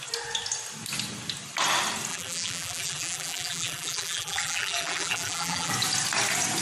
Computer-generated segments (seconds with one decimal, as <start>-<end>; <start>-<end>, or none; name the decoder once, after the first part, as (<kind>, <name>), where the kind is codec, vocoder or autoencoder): 2.1-5.7 (vocoder, BigVGAN v2)